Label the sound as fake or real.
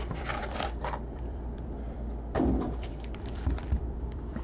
fake